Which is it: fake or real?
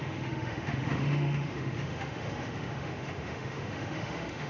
fake